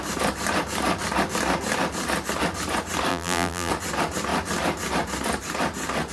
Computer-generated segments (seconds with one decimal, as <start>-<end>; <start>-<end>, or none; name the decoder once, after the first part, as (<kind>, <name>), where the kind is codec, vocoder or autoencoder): 3.1-3.7 (vocoder, BigVGAN v2)